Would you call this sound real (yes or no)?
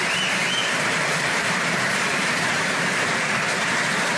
no